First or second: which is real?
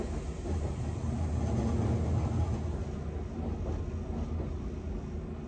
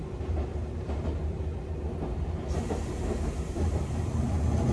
first